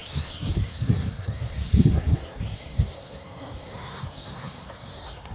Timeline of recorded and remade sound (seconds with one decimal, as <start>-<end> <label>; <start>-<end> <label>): 0.0-5.3 remade